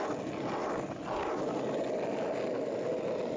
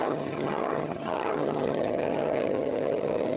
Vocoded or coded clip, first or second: second